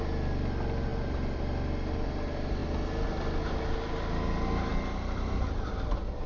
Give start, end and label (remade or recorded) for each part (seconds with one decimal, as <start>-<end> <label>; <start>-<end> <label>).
0.0-6.3 recorded